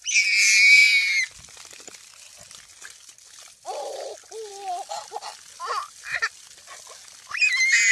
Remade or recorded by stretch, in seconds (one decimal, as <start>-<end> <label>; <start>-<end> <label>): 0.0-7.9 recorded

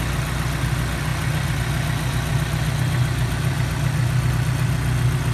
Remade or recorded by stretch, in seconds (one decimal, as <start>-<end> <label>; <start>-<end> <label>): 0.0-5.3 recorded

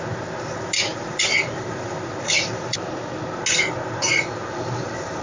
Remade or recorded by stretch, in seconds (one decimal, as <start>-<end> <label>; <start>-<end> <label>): 0.0-0.9 recorded; 0.9-2.9 remade; 2.9-4.0 recorded; 4.0-5.2 remade

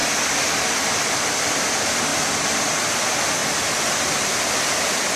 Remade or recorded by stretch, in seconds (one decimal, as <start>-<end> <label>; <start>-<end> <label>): 0.0-5.2 recorded

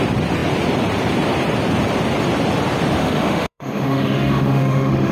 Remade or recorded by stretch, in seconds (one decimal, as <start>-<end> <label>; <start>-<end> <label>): 0.0-3.0 recorded; 3.0-5.1 remade

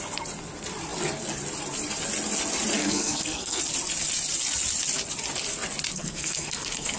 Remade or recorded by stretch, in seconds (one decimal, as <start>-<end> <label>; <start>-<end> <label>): 0.0-2.8 recorded; 2.8-3.6 remade; 3.6-5.9 recorded; 5.9-7.0 remade